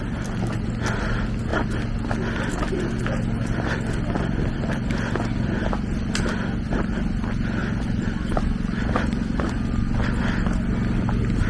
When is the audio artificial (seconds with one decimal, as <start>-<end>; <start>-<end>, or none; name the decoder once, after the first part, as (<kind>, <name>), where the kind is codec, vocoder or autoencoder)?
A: 7.6-10.2 (vocoder, BigVGAN v2)